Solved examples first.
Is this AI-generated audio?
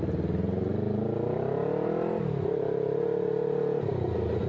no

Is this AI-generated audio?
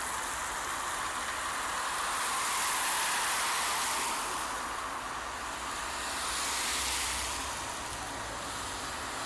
no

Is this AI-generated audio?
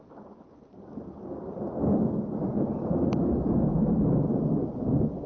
no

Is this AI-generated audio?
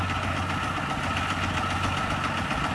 no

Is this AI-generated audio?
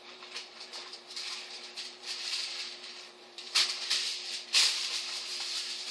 yes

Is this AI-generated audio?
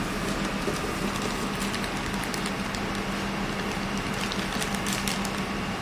no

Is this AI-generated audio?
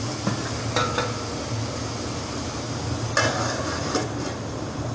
no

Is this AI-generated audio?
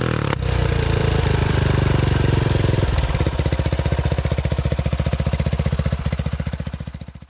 yes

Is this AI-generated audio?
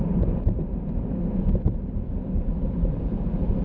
no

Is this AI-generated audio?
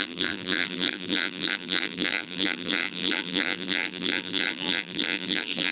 yes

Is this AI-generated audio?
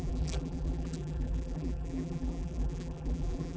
yes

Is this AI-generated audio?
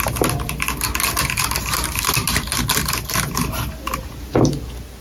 no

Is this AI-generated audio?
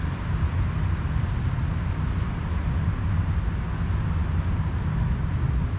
no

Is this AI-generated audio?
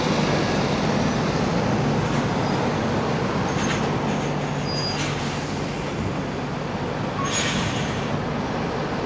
no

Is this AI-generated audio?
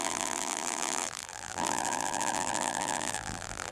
yes